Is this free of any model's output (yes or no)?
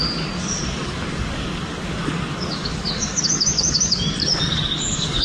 no